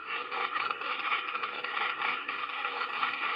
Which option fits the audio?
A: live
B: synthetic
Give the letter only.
B